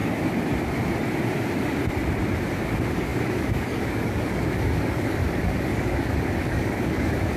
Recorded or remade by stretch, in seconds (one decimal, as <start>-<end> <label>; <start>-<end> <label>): 0.0-2.6 recorded; 2.6-7.4 remade